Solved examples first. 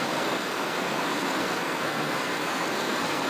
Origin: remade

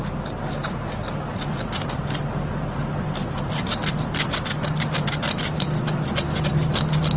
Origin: recorded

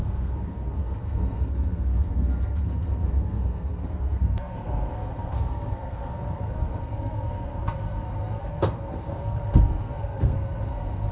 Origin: remade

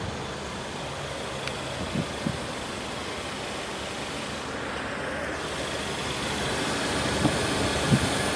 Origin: recorded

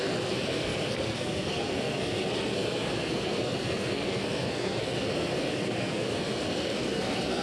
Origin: remade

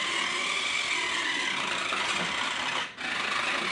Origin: recorded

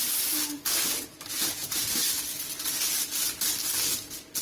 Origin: recorded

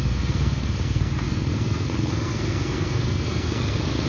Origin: remade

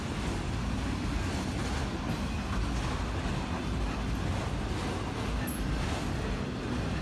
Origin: recorded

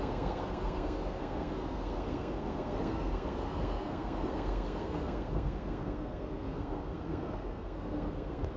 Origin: remade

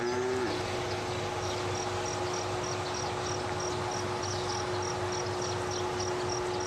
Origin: recorded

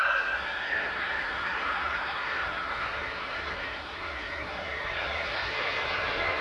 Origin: remade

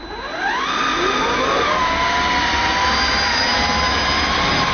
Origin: recorded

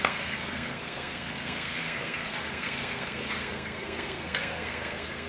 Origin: remade